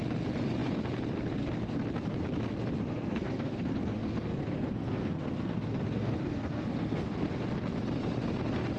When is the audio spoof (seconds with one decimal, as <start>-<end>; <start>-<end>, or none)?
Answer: 2.8-7.4